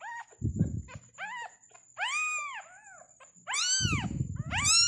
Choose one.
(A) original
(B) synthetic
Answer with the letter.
A